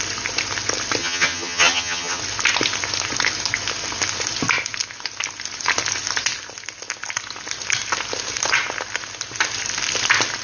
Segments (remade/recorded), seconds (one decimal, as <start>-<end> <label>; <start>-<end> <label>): 0.0-1.0 recorded; 1.0-2.2 remade; 2.2-10.4 recorded